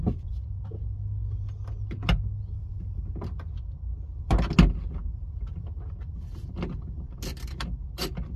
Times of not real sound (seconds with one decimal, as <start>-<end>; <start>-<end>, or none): none